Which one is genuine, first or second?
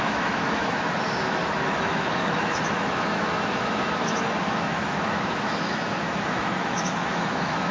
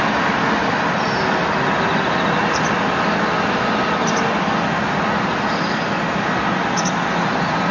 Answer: second